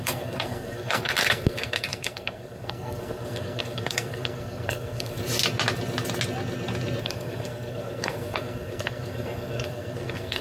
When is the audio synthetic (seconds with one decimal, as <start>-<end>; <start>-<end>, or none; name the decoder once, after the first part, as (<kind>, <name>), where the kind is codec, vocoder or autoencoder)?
0.0-5.2 (codec, SNAC); 7.0-10.4